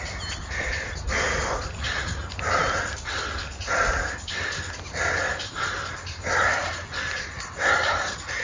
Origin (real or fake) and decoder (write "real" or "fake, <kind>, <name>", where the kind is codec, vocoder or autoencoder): real